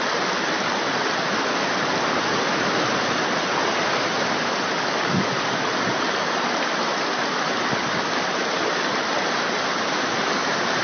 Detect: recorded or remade recorded